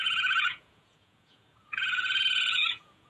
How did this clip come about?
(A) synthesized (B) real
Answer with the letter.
A